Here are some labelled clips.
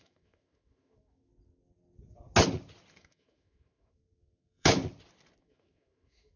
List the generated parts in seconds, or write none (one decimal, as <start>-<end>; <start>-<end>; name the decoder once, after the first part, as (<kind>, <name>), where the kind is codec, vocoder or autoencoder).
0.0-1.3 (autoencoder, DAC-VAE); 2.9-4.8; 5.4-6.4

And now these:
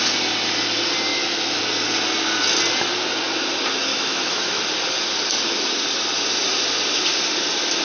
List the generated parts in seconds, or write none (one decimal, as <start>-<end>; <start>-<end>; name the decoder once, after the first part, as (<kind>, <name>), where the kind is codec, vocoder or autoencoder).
1.1-1.6 (autoencoder, DAC-VAE); 3.9-4.6

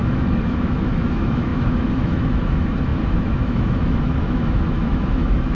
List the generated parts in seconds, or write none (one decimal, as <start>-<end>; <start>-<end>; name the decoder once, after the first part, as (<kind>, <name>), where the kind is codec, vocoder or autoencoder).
0.0-5.5 (autoencoder, DAC-VAE)

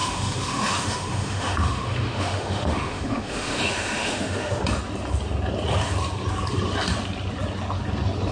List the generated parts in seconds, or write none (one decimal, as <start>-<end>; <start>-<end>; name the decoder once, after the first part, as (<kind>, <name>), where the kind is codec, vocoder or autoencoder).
0.0-4.6 (autoencoder, DAC-VAE)